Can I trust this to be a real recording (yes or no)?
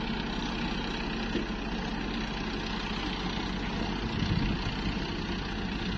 yes